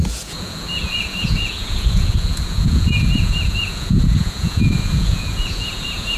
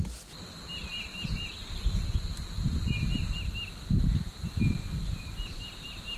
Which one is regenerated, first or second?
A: first